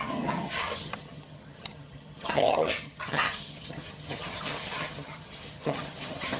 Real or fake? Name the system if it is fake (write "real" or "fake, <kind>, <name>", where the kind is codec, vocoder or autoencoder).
fake, vocoder, HiFi-GAN